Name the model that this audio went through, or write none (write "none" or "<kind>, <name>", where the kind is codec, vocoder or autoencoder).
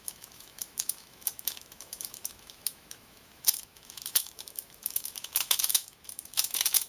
autoencoder, DAC-VAE